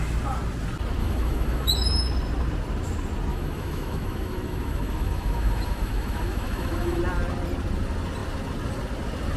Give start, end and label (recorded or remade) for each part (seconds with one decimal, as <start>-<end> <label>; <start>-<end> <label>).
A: 0.0-1.0 recorded; 1.0-1.7 remade; 1.7-3.3 recorded; 3.3-7.0 remade; 7.0-9.4 recorded